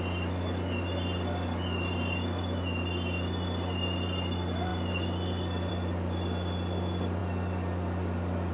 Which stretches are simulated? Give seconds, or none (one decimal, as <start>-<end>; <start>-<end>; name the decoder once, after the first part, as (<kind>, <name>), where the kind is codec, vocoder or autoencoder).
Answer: none